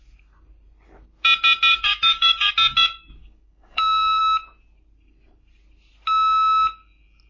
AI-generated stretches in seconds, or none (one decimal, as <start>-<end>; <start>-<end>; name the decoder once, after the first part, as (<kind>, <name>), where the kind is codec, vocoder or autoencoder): 1.7-2.5 (codec, DAC); 3.2-4.2